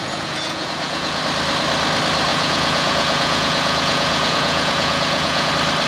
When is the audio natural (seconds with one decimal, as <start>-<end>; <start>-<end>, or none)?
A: 1.2-2.3; 5.5-5.9